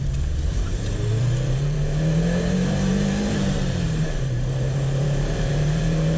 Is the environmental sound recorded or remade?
remade